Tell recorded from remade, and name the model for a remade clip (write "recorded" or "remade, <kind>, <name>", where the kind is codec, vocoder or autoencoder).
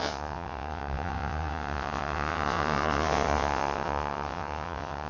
remade, vocoder, WaveNeXt